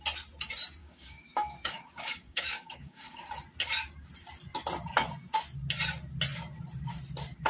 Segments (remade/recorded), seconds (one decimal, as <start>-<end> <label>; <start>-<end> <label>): 0.0-0.8 recorded; 0.8-3.3 remade; 3.3-7.5 recorded